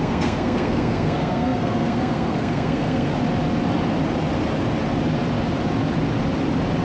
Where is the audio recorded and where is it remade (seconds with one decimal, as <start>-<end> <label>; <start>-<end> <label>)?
0.0-3.1 remade; 3.1-6.8 recorded